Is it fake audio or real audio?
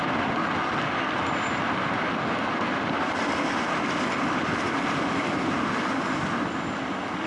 real